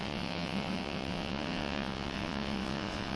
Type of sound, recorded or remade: remade